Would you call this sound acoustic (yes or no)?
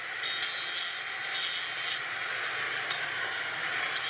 yes